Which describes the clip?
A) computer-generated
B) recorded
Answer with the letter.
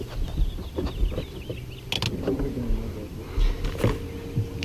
B